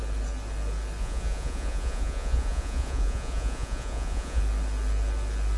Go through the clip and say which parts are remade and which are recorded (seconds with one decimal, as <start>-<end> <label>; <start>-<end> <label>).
0.0-1.0 recorded; 1.0-4.4 remade; 4.4-5.6 recorded

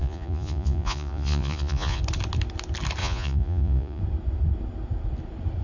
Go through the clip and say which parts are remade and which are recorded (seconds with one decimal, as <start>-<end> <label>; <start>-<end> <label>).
0.0-2.0 remade; 2.0-3.0 recorded; 3.0-4.0 remade; 4.0-5.6 recorded

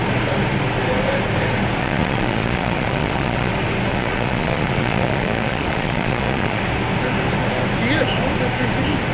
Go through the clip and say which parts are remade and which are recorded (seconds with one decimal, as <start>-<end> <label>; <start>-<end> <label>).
0.0-1.8 recorded; 1.8-3.5 remade; 3.5-3.9 recorded; 3.9-6.6 remade; 6.6-9.1 recorded

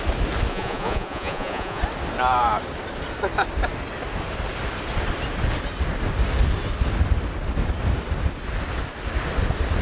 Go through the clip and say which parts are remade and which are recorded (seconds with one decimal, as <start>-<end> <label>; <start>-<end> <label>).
0.0-0.5 recorded; 0.5-1.8 remade; 1.8-9.8 recorded

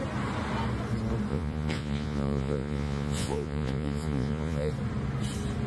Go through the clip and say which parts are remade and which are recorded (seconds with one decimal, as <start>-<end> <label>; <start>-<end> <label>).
0.0-1.3 recorded; 1.3-4.7 remade; 4.7-5.7 recorded